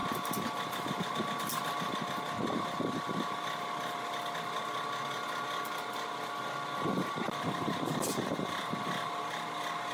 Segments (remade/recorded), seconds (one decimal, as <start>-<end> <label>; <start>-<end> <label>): 0.0-9.9 recorded